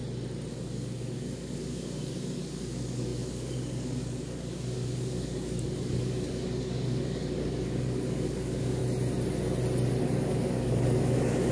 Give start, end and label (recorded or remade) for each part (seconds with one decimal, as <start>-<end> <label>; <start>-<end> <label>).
0.0-0.5 recorded; 0.5-8.8 remade; 8.8-10.0 recorded; 10.0-11.5 remade